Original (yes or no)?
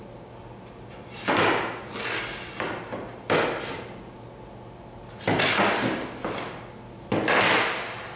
yes